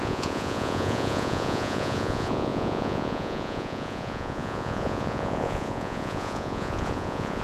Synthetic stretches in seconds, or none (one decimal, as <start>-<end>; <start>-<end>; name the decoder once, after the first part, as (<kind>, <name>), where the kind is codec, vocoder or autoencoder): 0.0-7.4 (vocoder, Vocos)